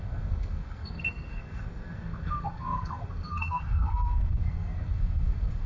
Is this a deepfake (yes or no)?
yes